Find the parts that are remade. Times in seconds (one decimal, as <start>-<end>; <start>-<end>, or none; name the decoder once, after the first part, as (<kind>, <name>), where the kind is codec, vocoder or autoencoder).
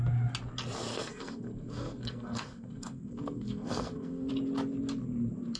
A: 0.9-4.3 (codec, SNAC)